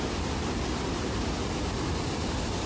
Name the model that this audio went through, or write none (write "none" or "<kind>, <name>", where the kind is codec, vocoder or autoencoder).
none